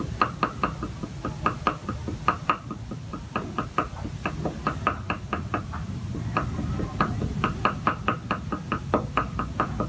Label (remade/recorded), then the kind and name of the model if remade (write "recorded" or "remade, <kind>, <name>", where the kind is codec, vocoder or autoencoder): recorded